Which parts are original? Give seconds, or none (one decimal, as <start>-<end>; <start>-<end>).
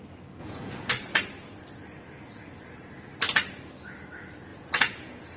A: 0.0-0.4; 0.9-4.5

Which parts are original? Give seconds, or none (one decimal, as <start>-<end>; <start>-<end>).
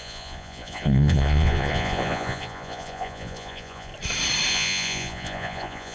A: 3.9-4.5